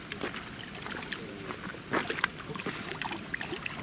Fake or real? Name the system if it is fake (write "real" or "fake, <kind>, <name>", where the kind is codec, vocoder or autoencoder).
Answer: real